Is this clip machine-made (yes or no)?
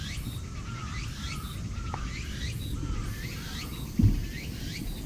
no